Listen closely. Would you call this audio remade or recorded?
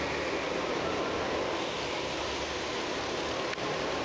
recorded